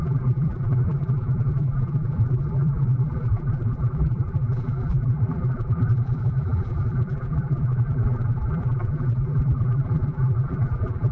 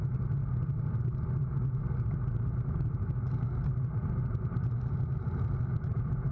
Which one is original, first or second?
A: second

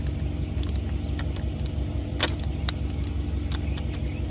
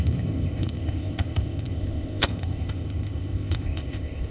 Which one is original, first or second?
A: first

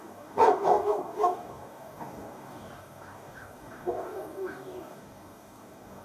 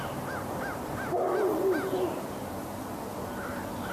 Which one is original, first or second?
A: second